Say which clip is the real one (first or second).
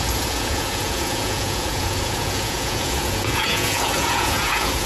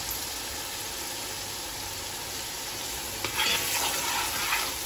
second